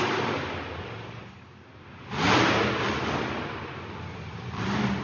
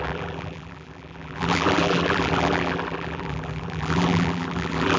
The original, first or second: first